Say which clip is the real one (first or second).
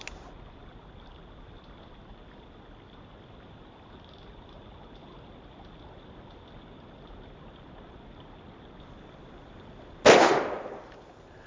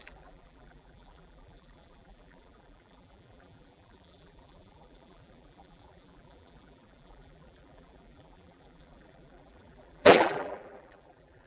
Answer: first